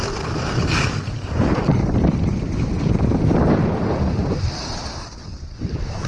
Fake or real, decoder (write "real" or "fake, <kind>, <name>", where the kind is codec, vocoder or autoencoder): fake, vocoder, BigVGAN v2